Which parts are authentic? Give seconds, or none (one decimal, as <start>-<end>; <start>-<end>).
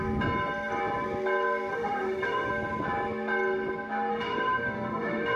0.0-1.7; 2.5-4.1